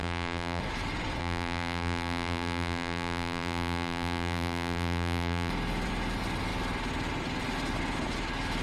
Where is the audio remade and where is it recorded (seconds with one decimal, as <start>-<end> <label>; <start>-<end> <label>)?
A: 0.0-0.6 remade; 0.6-1.2 recorded; 1.2-5.5 remade; 5.5-8.6 recorded